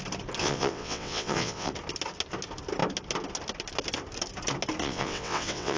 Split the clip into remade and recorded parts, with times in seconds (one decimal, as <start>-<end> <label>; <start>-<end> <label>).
0.0-0.4 recorded; 0.4-1.7 remade; 1.7-4.8 recorded; 4.8-5.8 remade